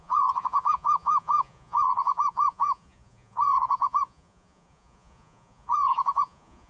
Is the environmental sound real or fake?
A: fake